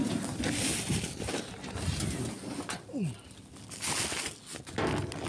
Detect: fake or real real